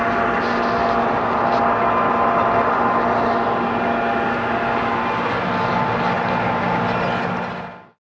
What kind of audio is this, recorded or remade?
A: recorded